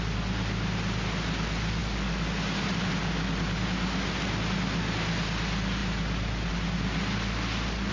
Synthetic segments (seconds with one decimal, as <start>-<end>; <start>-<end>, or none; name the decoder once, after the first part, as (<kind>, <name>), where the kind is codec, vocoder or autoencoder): none